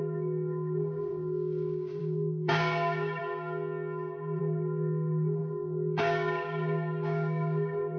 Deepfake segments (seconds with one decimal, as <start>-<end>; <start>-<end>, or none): 0.0-3.2; 4.4-8.0